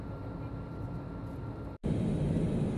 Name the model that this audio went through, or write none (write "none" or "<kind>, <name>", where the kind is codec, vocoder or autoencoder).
none